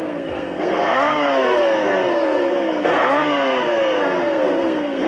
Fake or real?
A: fake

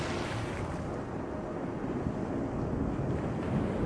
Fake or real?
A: real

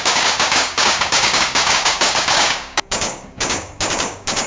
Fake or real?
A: fake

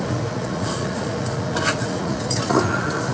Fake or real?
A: fake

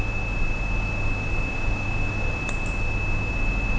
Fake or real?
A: real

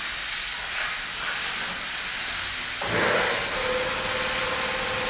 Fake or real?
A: real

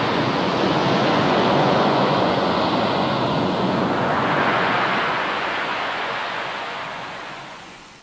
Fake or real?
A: fake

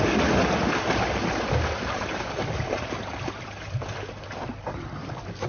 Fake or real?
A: real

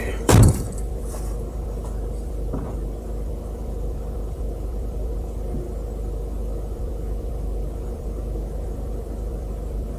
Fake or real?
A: fake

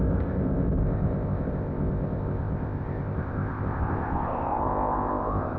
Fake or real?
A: fake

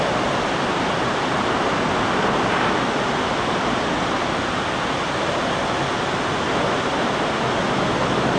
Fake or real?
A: real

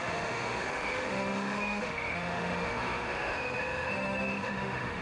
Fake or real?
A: fake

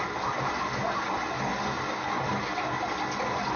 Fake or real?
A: real